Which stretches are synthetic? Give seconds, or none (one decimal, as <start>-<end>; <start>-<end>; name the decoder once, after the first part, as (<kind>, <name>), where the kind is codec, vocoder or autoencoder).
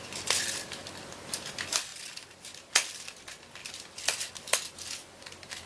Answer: 3.6-4.3 (vocoder, BigVGAN v2)